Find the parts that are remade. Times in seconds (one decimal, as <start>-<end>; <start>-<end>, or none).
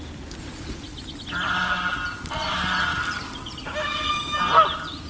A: none